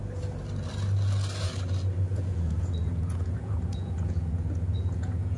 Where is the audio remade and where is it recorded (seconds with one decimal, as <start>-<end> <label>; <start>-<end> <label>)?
0.0-2.1 recorded; 2.1-5.4 remade